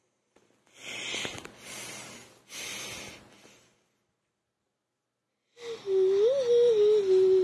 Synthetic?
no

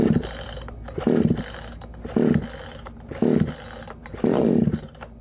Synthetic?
no